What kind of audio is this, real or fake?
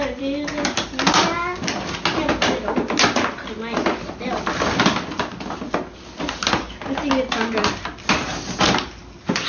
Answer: real